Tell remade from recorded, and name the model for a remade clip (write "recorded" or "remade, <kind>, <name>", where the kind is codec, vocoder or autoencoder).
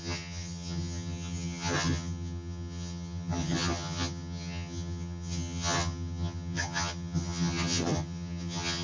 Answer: remade, vocoder, HiFi-GAN